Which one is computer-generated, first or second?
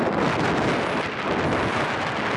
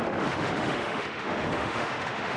second